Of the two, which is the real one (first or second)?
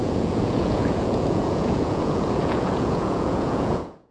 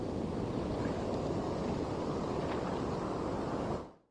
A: second